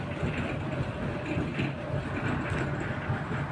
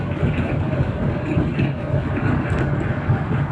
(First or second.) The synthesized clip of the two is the second